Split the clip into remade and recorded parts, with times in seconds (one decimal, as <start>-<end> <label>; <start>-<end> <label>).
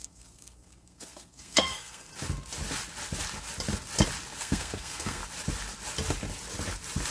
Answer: 0.0-2.1 remade; 2.1-4.4 recorded; 4.4-5.2 remade; 5.2-7.1 recorded